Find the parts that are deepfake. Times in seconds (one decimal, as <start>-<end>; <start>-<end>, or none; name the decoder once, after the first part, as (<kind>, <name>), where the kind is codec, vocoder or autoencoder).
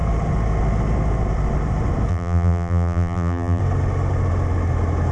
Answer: 2.1-3.6 (vocoder, BigVGAN v2)